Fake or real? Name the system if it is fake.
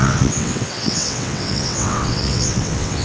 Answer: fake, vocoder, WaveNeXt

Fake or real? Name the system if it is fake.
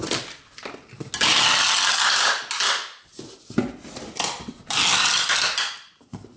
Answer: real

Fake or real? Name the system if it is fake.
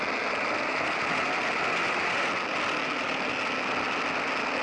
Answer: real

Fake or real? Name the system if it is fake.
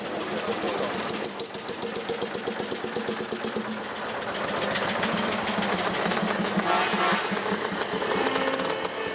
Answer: real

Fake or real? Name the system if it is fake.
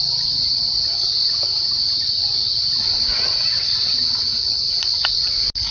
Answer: real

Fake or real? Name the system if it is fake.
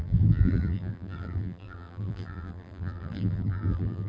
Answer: fake, vocoder, BigVGAN v2